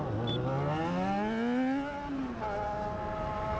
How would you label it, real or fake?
real